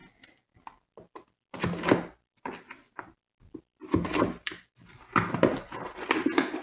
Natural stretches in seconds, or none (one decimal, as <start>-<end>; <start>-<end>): 0.0-6.6